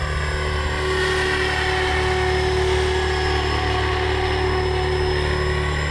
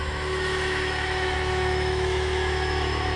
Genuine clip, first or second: first